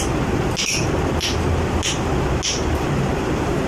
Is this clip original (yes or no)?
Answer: yes